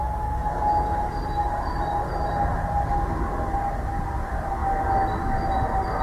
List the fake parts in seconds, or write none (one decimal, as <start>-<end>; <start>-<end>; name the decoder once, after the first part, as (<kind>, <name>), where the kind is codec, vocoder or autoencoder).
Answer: 0.0-1.1 (autoencoder, DAC-VAE)